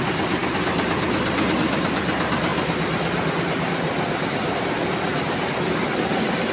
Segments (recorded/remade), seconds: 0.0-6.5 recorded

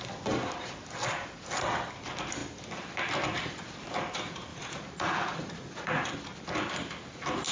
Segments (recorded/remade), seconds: 0.0-4.5 recorded; 4.5-6.1 remade; 6.1-7.5 recorded

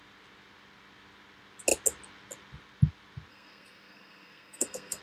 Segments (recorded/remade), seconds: 0.0-3.3 recorded; 3.3-5.0 remade

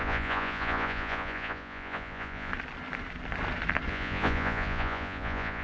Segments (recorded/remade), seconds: 0.0-2.5 remade; 2.5-3.9 recorded; 3.9-5.6 remade

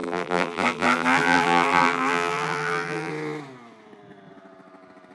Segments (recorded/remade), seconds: 0.0-3.1 remade; 3.1-5.1 recorded

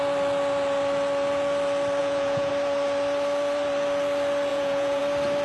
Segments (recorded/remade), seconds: 0.0-2.0 recorded; 2.0-2.5 remade; 2.5-4.5 recorded; 4.5-5.0 remade; 5.0-5.4 recorded

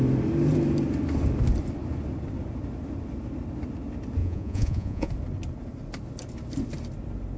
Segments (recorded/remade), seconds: 0.0-4.2 recorded; 4.2-5.1 remade; 5.1-7.4 recorded